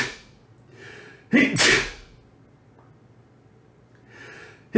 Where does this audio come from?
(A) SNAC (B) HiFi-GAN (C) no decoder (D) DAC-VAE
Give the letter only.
C